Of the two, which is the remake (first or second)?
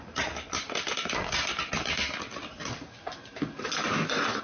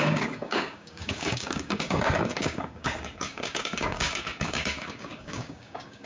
second